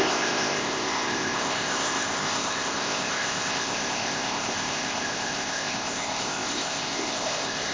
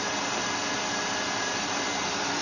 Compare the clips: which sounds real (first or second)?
second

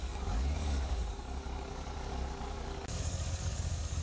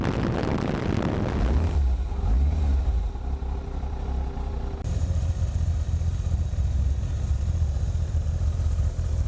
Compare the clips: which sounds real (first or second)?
second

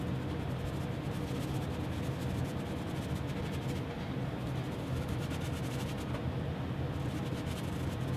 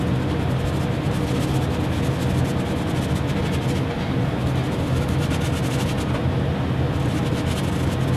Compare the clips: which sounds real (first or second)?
second